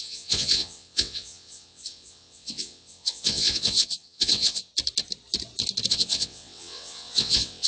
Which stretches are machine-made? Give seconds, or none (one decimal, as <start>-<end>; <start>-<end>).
0.0-4.7; 5.9-7.7